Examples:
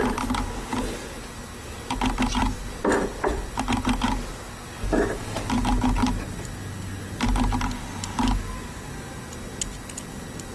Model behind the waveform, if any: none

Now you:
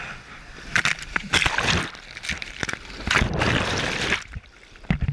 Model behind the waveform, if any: vocoder, BigVGAN v2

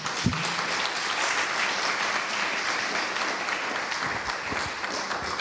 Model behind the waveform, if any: none